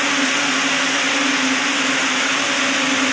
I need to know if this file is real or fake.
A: real